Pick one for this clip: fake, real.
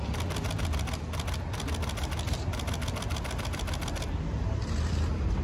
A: real